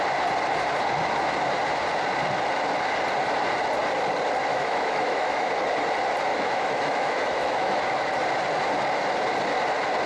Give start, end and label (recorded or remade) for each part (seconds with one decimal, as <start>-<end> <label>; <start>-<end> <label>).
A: 0.0-4.5 recorded; 4.5-5.5 remade; 5.5-6.3 recorded; 6.3-7.8 remade; 7.8-10.1 recorded